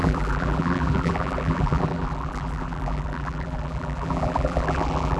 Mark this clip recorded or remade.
remade